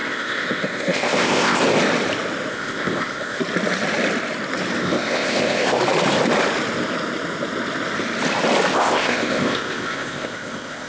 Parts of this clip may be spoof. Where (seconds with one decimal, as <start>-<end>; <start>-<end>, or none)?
0.0-1.6; 2.5-3.4; 4.8-5.8; 8.7-10.9